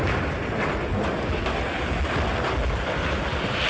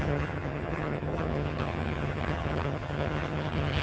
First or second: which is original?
first